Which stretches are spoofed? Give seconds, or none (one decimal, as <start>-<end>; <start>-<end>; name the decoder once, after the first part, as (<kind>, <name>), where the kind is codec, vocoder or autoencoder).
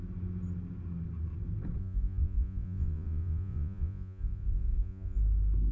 1.8-5.2 (vocoder, Vocos)